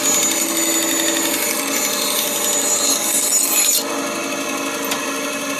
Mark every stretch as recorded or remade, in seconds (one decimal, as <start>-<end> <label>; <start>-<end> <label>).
0.0-5.6 recorded